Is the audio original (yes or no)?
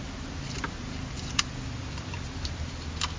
yes